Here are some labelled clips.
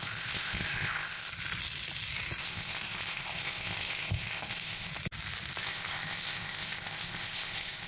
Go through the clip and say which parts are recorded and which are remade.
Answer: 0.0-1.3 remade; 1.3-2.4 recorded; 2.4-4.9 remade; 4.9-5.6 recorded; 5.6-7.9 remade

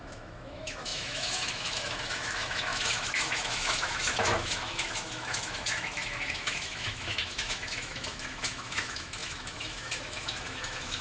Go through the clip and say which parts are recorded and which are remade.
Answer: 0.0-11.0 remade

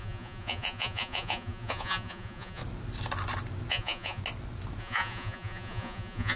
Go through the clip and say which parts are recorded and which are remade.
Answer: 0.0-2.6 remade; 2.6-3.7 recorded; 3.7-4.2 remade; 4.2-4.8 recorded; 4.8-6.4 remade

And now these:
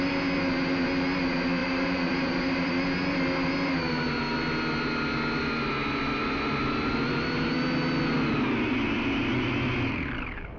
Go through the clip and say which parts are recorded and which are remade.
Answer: 0.0-1.6 recorded; 1.6-2.7 remade; 2.7-10.6 recorded

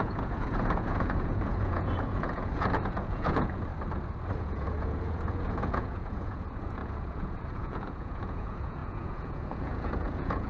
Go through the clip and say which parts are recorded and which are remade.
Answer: 0.0-3.7 remade; 3.7-4.4 recorded; 4.4-10.5 remade